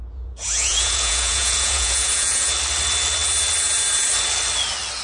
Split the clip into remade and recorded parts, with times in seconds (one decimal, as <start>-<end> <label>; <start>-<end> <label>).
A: 0.0-2.5 remade; 2.5-5.0 recorded